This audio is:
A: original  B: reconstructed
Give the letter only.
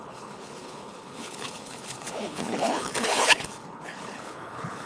B